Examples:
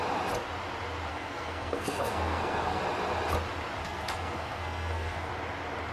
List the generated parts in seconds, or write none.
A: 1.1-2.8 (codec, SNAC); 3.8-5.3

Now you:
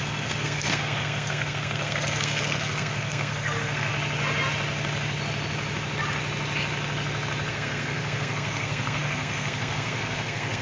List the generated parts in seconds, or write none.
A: 0.0-3.9 (codec, SNAC); 7.5-10.6